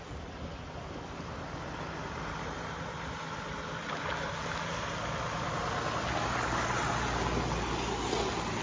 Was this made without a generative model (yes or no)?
yes